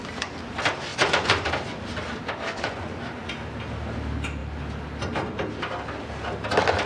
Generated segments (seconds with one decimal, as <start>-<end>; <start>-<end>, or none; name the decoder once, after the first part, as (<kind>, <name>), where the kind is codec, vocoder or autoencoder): 0.9-1.5 (vocoder, Vocos); 2.5-3.3